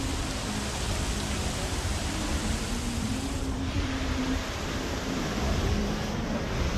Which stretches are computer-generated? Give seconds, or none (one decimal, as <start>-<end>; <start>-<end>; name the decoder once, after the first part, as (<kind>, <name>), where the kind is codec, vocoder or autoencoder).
2.3-5.8 (vocoder, BigVGAN v2)